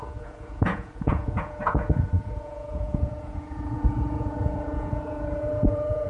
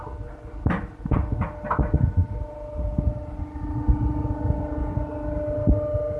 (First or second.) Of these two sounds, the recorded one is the second